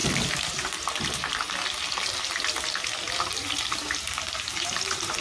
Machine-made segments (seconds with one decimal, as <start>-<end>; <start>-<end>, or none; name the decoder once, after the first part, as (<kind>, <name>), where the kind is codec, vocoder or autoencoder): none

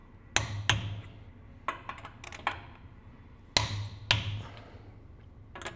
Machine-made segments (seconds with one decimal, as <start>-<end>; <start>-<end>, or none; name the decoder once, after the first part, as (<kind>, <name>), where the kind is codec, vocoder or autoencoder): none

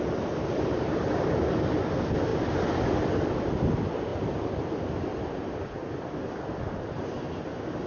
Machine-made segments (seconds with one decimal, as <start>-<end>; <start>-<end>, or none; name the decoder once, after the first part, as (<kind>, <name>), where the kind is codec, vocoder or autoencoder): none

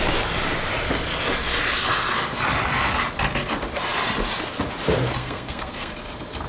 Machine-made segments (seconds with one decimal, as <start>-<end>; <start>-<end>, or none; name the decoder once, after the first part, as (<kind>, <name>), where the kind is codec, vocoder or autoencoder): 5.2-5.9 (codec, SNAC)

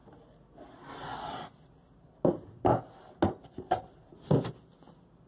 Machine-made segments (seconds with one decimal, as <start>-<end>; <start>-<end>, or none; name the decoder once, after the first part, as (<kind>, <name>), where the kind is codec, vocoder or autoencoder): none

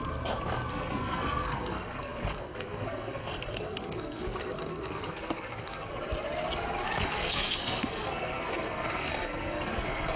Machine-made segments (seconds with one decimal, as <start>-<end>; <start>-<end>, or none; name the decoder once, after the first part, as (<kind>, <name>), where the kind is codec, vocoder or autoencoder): 0.7-5.9 (codec, SNAC); 7.0-10.2

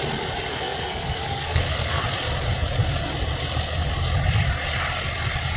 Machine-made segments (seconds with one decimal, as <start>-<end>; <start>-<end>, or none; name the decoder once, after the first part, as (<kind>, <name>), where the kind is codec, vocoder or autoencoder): 0.5-2.0 (codec, SNAC)

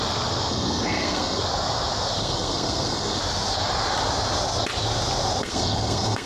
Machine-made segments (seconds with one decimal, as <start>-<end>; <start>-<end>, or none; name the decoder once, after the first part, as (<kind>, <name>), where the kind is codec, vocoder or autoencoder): 0.5-1.4 (codec, SNAC); 2.2-3.2; 5.4-6.3